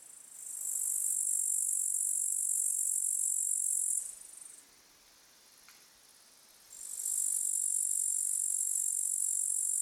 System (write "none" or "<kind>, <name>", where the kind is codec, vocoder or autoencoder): none